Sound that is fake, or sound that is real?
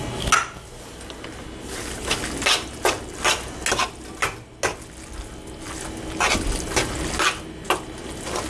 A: real